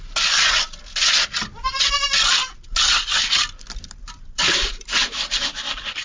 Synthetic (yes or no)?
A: no